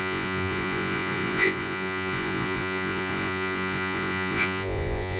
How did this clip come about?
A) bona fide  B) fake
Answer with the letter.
B